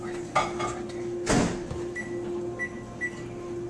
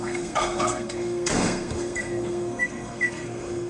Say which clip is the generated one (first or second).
second